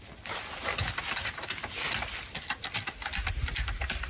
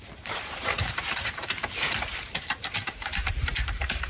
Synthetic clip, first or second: second